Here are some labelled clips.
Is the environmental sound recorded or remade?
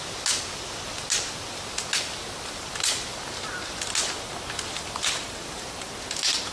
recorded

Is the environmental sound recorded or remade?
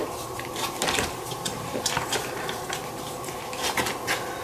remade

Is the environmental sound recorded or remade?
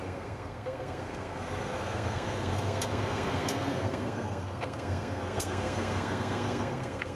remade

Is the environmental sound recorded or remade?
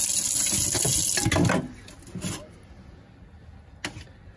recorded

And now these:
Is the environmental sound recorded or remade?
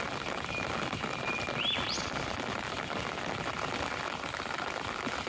recorded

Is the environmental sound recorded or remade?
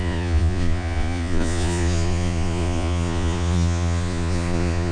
remade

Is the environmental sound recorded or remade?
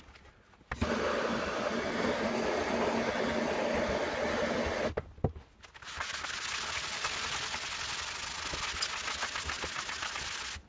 recorded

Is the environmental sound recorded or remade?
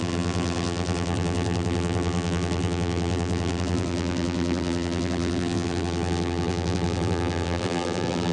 remade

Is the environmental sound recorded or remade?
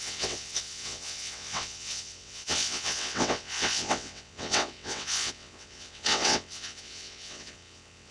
remade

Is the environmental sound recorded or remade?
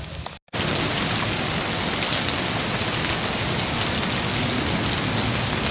recorded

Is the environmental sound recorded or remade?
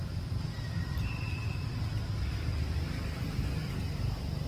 recorded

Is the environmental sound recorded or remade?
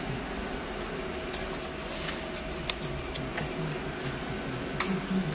recorded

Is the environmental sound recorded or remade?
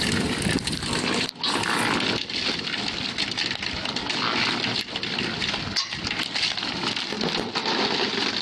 recorded